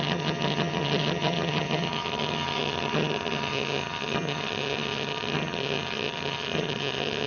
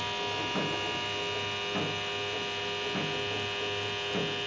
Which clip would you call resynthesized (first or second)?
first